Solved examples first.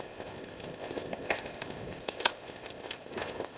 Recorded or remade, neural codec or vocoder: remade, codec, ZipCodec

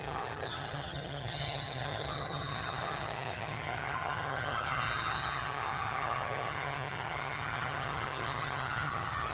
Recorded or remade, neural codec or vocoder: remade, vocoder, HiFi-GAN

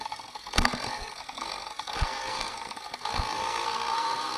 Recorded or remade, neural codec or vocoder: remade, codec, SNAC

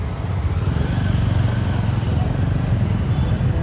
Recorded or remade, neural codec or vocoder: recorded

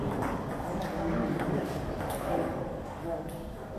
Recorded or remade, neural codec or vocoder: remade, codec, DAC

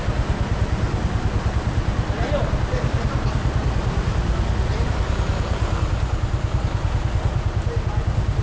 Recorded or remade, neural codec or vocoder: recorded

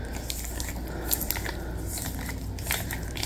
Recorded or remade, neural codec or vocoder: recorded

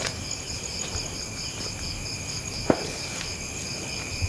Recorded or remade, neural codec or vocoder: recorded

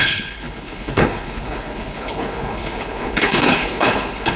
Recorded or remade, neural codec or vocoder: remade, codec, HILCodec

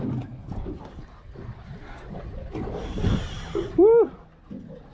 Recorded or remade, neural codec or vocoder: recorded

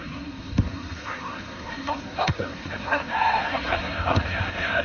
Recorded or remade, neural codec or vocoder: remade, codec, SNAC